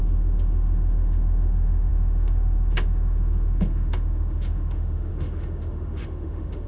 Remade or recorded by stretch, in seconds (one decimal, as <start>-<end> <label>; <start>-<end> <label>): 0.0-6.7 remade